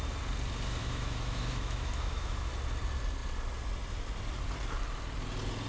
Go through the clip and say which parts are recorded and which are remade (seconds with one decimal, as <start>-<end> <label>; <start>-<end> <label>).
0.0-0.8 recorded; 0.8-2.5 remade; 2.5-5.7 recorded